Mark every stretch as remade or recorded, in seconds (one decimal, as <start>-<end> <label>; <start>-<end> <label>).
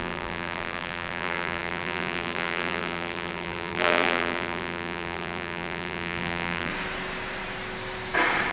0.0-6.7 remade; 6.7-8.5 recorded